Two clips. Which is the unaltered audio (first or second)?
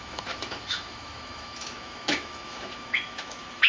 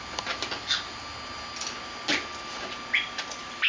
second